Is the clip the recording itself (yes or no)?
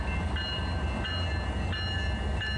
yes